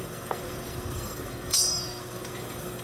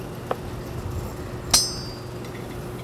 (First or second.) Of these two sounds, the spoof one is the first